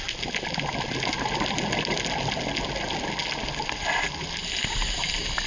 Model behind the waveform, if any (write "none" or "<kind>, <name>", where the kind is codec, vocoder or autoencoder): none